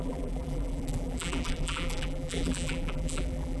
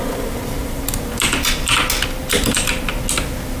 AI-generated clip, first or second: first